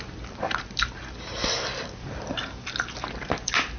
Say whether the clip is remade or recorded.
recorded